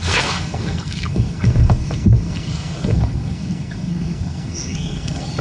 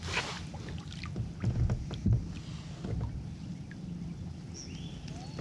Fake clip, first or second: first